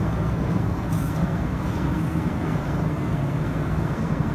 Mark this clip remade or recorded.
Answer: remade